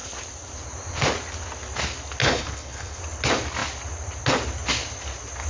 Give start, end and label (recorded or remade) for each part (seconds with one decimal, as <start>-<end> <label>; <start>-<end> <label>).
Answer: 0.0-2.2 recorded; 2.2-3.0 remade; 3.0-5.5 recorded